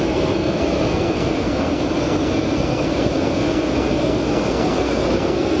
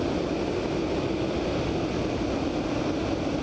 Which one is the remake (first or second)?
first